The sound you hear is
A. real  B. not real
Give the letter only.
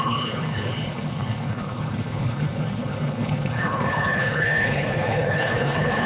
B